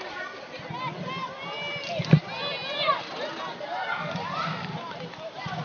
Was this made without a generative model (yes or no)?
yes